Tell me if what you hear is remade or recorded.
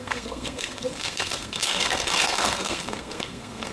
remade